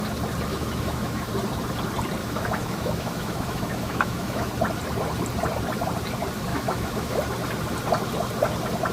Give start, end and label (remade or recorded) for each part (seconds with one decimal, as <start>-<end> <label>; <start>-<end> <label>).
0.0-0.5 recorded; 0.5-1.3 remade; 1.3-2.2 recorded; 2.2-4.5 remade; 4.5-6.5 recorded; 6.5-7.2 remade; 7.2-8.9 recorded